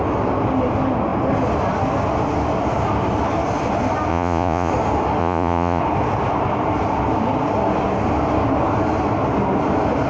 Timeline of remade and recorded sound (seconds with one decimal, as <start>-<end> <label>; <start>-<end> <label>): 0.0-4.1 recorded; 4.1-4.7 remade; 4.7-5.2 recorded; 5.2-5.8 remade; 5.8-10.1 recorded